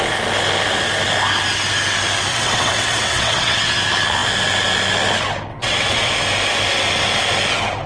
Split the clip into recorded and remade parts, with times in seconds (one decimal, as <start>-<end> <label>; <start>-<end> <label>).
0.0-2.3 recorded; 2.3-3.8 remade; 3.8-5.5 recorded; 5.5-6.1 remade; 6.1-7.9 recorded